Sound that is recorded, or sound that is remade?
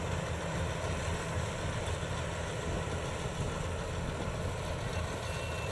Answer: recorded